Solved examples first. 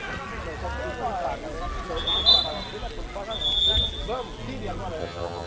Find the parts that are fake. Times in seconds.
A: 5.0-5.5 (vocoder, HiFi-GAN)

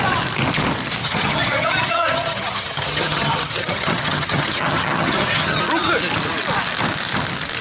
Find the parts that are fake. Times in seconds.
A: 1.0-5.6 (vocoder, HiFi-GAN)